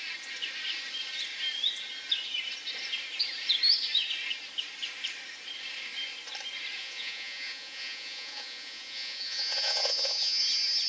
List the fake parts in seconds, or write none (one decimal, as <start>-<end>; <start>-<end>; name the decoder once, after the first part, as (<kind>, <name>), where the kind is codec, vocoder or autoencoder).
6.8-10.4 (vocoder, Vocos)